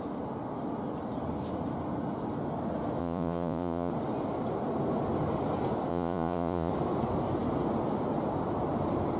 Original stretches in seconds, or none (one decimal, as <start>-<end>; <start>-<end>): 0.0-3.0; 3.9-5.9; 6.7-9.2